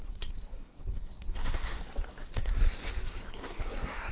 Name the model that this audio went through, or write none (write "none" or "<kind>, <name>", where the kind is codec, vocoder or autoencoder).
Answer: codec, SNAC